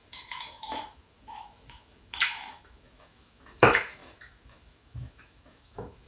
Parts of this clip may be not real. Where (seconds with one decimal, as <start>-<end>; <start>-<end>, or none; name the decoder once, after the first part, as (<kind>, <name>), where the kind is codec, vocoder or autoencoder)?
0.0-6.1 (autoencoder, DAC-VAE)